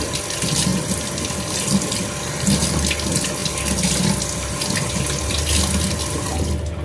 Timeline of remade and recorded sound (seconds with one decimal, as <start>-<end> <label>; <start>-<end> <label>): 0.0-6.8 recorded